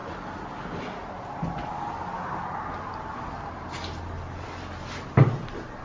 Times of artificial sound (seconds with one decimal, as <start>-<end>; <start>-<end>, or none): none